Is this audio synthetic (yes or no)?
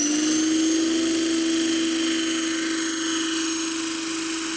no